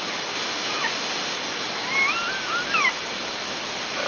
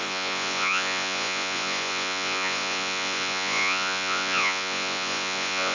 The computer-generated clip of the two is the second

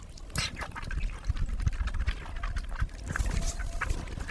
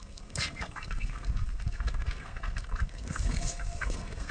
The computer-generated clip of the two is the second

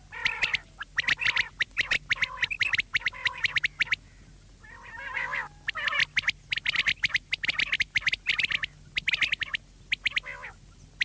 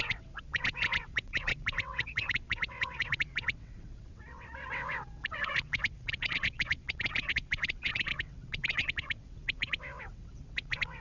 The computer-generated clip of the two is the second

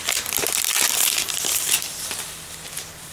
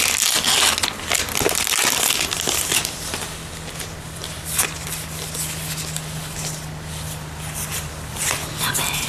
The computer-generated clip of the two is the first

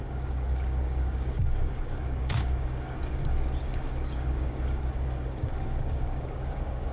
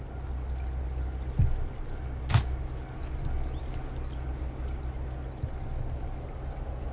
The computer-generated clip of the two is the first